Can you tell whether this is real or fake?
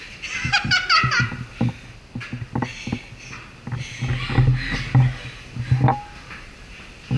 real